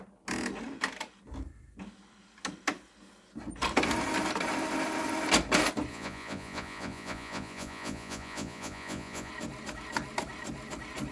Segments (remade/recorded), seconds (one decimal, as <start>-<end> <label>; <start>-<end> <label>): 0.0-5.9 recorded; 5.9-9.3 remade; 9.3-11.1 recorded